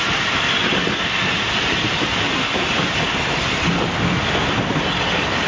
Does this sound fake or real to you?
real